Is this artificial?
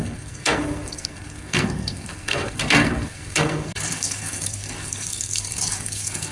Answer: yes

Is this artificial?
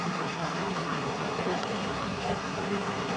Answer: yes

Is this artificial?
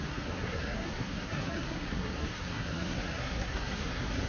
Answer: yes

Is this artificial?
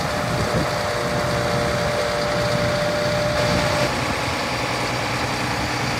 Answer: no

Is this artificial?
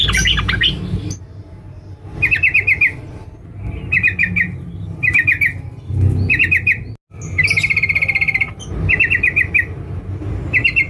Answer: no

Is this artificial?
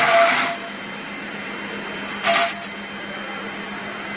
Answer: no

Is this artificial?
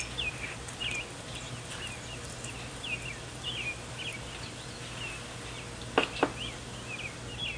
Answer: no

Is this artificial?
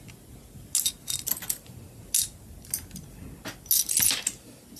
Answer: no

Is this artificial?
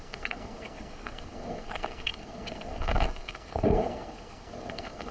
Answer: yes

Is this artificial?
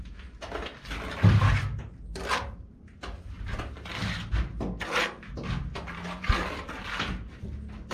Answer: no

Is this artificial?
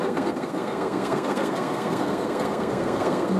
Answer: yes